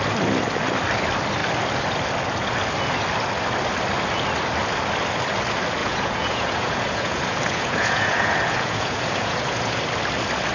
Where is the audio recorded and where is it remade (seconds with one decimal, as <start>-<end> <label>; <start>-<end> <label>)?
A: 0.0-5.8 recorded; 5.8-9.8 remade; 9.8-10.5 recorded